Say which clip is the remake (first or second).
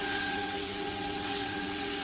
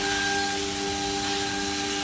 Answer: first